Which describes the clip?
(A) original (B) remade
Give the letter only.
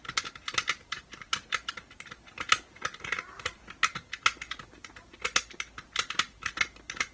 A